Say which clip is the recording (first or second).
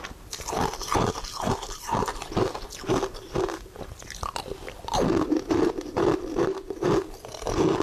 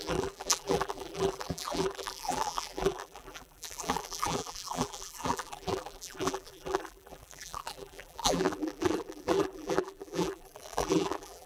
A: first